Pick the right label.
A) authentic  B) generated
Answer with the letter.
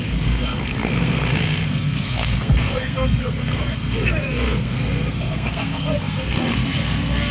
B